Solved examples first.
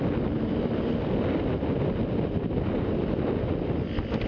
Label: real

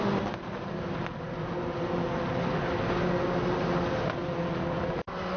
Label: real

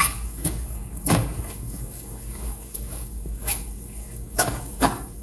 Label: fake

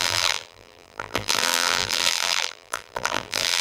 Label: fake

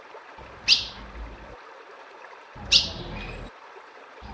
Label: real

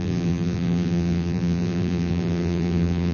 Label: fake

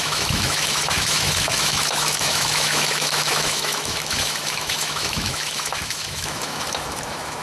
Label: fake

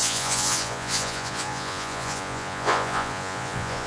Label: fake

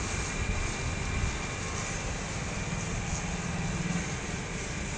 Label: real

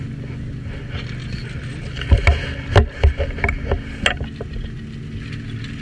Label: real